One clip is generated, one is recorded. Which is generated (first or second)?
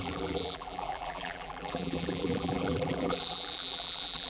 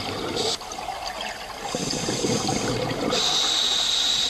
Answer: first